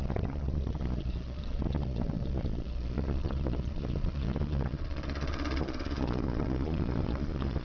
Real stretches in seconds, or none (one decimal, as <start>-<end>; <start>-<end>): none